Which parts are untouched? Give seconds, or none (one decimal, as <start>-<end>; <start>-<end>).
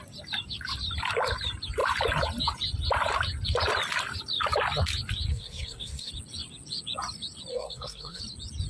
0.0-5.3; 6.1-7.5; 8.2-8.7